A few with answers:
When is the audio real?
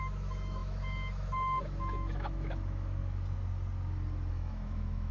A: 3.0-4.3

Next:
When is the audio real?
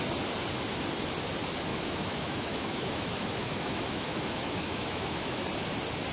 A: 0.0-1.7; 5.4-6.1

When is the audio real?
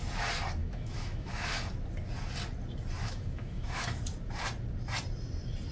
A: 0.0-0.6; 1.5-3.0; 4.0-5.7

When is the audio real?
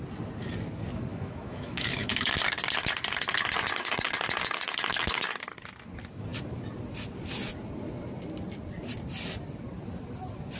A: 0.0-1.1; 2.3-10.6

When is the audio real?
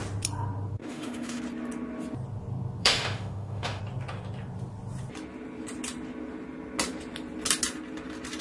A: 0.0-0.8; 1.4-2.8; 3.8-8.4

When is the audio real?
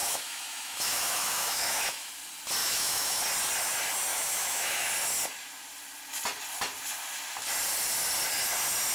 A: 2.1-2.6; 3.2-4.1; 4.9-8.9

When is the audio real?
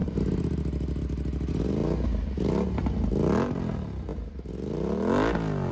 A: 0.0-5.7